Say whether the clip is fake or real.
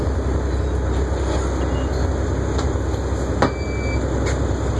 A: real